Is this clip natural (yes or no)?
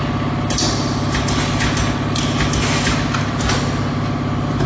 yes